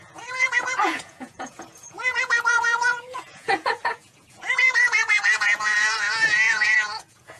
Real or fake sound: fake